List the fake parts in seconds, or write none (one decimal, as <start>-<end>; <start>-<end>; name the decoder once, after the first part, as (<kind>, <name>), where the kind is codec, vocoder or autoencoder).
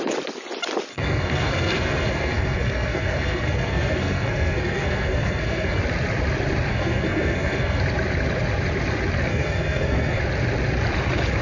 0.9-5.8 (codec, SNAC); 6.7-7.8; 9.3-10.2